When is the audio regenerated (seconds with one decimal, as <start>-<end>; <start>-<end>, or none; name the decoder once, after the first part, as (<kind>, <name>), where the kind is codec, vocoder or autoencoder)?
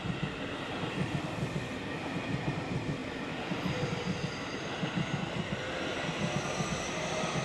none